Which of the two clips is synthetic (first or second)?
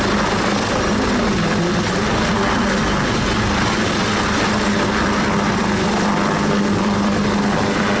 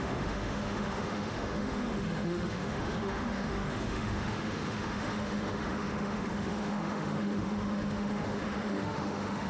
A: second